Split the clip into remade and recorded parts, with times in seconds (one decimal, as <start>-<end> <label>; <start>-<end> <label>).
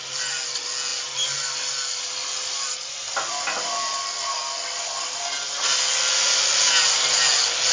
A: 0.0-7.7 recorded